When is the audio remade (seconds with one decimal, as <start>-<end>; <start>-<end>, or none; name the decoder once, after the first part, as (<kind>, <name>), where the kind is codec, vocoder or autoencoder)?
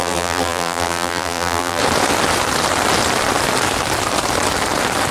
0.0-1.8 (vocoder, BigVGAN v2)